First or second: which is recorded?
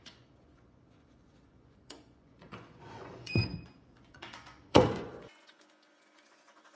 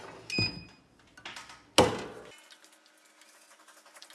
second